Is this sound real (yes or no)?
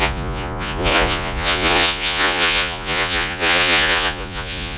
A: no